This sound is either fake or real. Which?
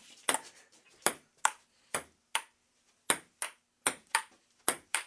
real